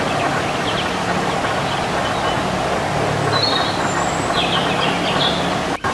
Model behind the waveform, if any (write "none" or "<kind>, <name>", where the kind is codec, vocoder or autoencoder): none